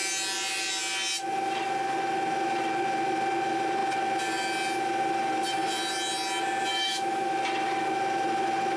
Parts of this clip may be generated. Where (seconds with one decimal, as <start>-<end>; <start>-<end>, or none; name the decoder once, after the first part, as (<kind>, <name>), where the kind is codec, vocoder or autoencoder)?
6.7-7.3 (autoencoder, DAC-VAE)